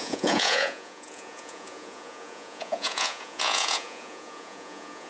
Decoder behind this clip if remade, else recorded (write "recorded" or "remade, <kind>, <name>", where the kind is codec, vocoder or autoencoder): remade, vocoder, Vocos